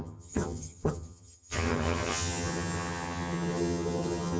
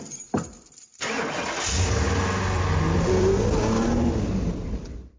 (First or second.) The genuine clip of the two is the second